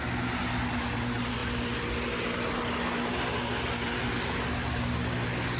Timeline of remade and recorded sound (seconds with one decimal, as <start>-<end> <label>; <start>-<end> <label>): 0.0-5.6 recorded